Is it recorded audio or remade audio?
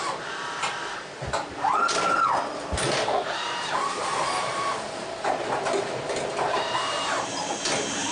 remade